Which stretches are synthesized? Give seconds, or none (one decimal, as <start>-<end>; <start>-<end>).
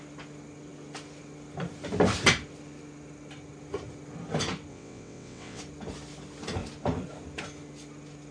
4.7-5.6